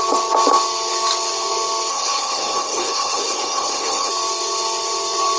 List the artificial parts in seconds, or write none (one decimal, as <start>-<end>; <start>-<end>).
1.9-4.1